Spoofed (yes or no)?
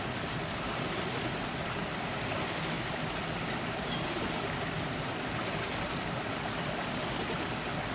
no